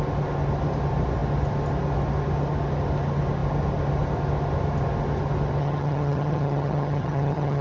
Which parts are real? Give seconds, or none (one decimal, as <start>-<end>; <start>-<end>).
0.0-5.6

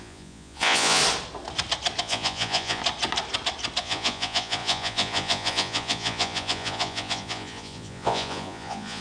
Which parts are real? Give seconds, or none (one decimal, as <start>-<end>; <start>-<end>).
1.0-2.0; 2.8-3.8

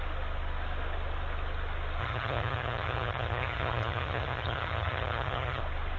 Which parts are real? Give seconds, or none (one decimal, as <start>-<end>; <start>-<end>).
0.0-2.0; 5.6-6.0